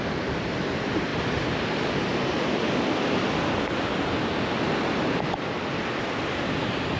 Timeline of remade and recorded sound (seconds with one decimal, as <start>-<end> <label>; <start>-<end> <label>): 0.0-7.0 recorded